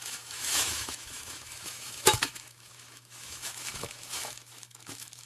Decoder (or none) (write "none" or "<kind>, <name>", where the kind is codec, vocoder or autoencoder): autoencoder, DAC-VAE